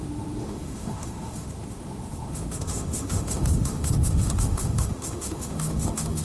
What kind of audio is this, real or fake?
fake